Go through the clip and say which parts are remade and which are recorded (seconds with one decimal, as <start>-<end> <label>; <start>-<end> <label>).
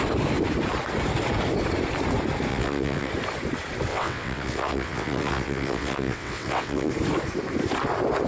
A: 0.0-2.5 recorded; 2.5-3.1 remade; 3.1-3.9 recorded; 3.9-6.9 remade; 6.9-8.3 recorded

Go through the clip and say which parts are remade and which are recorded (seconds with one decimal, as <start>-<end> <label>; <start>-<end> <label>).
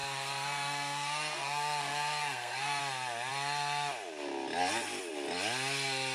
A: 0.0-2.8 remade; 2.8-6.1 recorded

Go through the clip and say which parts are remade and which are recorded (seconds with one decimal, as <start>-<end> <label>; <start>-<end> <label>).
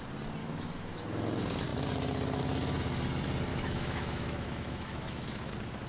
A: 0.0-0.4 recorded; 0.4-1.0 remade; 1.0-3.5 recorded; 3.5-5.5 remade; 5.5-5.9 recorded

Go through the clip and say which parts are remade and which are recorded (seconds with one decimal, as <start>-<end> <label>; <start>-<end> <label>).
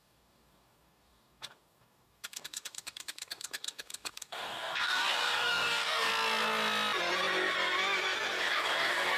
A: 0.0-6.1 remade; 6.1-8.4 recorded; 8.4-9.2 remade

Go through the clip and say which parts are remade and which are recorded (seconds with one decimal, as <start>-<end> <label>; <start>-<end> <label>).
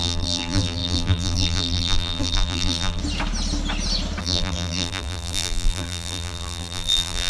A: 0.0-3.0 remade; 3.0-4.2 recorded; 4.2-7.3 remade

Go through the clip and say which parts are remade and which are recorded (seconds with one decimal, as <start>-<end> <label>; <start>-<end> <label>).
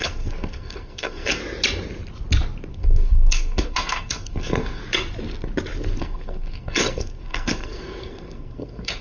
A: 0.0-1.4 remade; 1.4-2.7 recorded; 2.7-4.8 remade; 4.8-6.0 recorded; 6.0-9.0 remade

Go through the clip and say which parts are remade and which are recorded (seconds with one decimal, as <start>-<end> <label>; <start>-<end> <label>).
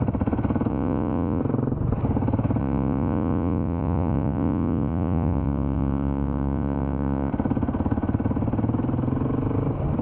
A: 0.0-0.7 recorded; 0.7-1.4 remade; 1.4-2.6 recorded; 2.6-7.3 remade; 7.3-10.0 recorded